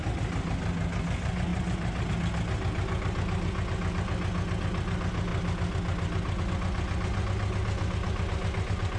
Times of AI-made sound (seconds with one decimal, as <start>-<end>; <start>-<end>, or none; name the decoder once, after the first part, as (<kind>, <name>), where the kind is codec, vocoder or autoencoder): none